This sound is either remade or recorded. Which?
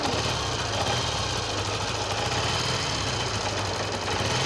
recorded